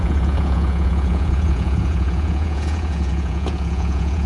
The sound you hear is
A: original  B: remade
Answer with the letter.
B